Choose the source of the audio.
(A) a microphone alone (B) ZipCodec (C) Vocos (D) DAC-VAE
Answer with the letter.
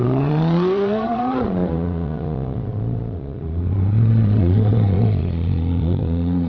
C